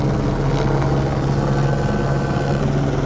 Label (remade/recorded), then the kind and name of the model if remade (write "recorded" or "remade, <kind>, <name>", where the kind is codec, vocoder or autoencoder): recorded